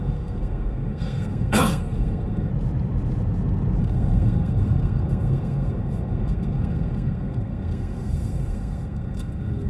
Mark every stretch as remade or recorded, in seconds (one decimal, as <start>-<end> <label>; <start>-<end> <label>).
0.0-2.5 remade; 2.5-3.8 recorded; 3.8-9.7 remade